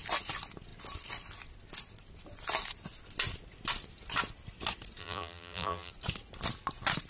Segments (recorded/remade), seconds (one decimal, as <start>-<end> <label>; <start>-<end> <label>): 0.0-5.0 recorded; 5.0-5.9 remade; 5.9-7.1 recorded